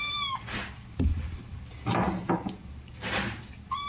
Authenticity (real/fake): real